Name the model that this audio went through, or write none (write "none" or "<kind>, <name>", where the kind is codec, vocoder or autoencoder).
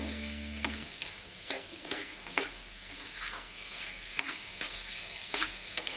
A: codec, SNAC